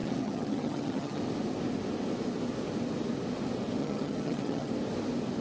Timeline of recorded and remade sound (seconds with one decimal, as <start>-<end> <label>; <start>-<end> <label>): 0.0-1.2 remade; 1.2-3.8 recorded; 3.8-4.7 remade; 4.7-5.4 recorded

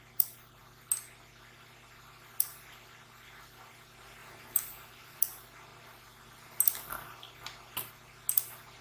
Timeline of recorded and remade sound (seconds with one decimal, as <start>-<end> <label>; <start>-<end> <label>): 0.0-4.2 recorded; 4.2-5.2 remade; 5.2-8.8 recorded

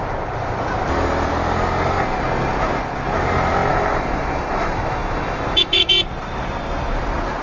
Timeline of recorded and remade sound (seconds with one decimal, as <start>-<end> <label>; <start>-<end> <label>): 0.0-3.7 recorded; 3.7-5.9 remade; 5.9-7.4 recorded

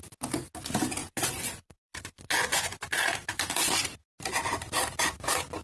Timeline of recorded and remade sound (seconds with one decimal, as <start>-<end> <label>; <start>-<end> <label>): 0.0-1.0 recorded; 1.0-2.8 remade; 2.8-5.6 recorded

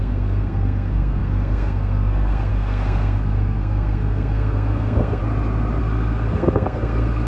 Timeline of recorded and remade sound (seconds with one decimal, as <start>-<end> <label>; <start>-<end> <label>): 0.0-5.2 remade; 5.2-5.8 recorded; 5.8-7.3 remade

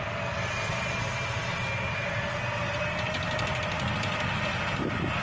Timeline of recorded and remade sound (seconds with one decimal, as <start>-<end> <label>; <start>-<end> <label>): 0.0-5.2 recorded

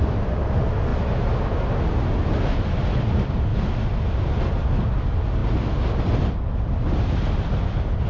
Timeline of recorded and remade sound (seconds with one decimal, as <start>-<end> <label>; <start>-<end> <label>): 0.0-3.5 recorded; 3.5-4.2 remade; 4.2-8.1 recorded

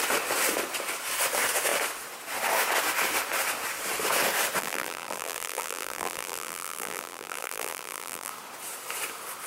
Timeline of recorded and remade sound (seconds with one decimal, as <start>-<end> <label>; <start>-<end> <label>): 0.0-4.6 recorded; 4.6-8.3 remade; 8.3-9.5 recorded